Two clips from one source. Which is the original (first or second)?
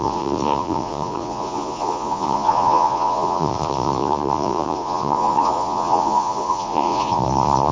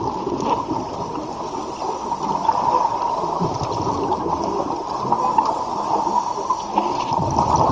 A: second